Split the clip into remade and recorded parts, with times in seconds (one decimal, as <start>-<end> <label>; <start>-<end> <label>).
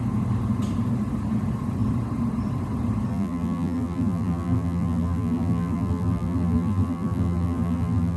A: 0.0-3.1 recorded; 3.1-8.2 remade